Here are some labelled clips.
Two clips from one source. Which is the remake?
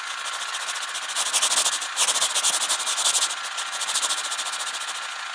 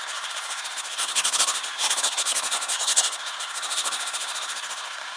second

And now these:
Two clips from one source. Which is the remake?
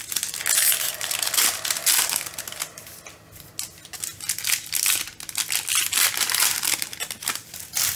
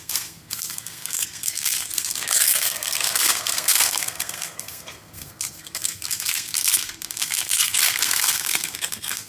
second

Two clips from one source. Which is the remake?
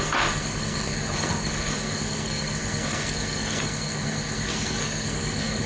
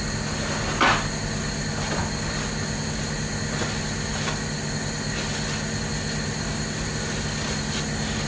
first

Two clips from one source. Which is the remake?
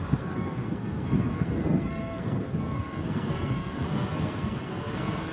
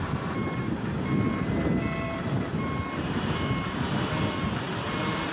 first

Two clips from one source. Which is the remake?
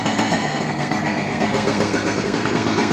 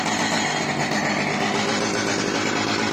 first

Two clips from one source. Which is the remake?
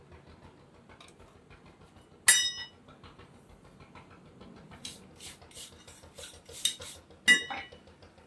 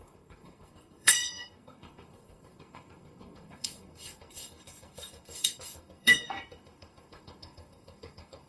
second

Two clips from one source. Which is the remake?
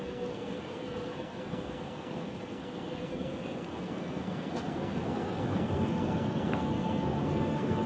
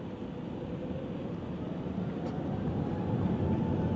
first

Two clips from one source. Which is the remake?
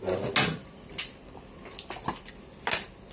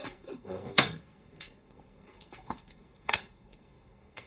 second